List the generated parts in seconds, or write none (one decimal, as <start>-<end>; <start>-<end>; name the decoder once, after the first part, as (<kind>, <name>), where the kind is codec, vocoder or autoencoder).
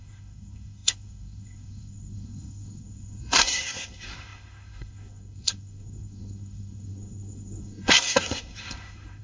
0.0-9.2 (codec, SNAC)